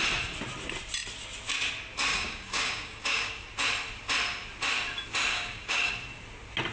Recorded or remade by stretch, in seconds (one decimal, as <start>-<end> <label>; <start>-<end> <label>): 0.0-2.1 recorded; 2.1-3.3 remade; 3.3-5.3 recorded; 5.3-5.9 remade; 5.9-6.7 recorded

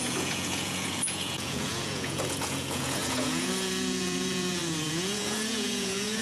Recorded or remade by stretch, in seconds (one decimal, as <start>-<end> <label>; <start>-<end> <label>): 0.0-6.2 remade

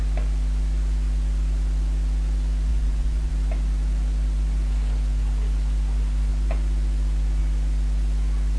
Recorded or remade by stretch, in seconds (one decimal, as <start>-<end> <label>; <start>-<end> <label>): 0.0-2.7 recorded; 2.7-3.3 remade; 3.3-8.6 recorded

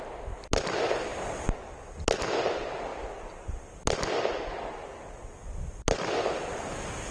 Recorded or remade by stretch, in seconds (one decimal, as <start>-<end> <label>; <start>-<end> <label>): 0.0-7.1 recorded

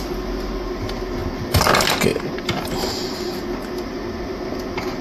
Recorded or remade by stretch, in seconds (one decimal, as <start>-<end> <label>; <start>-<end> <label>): 0.0-2.1 recorded; 2.1-3.0 remade; 3.0-5.0 recorded

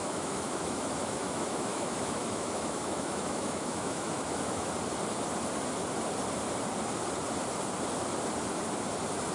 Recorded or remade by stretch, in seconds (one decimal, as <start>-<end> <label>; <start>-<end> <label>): 0.0-4.7 remade; 4.7-9.3 recorded

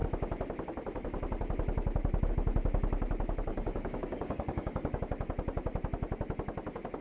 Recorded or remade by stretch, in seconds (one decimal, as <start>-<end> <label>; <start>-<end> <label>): 0.0-3.5 recorded; 3.5-5.0 remade; 5.0-7.0 recorded

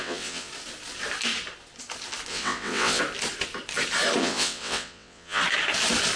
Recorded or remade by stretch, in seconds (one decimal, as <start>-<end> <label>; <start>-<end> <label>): 0.0-0.5 remade; 0.5-2.3 recorded; 2.3-3.0 remade; 3.0-4.2 recorded; 4.2-5.4 remade; 5.4-6.2 recorded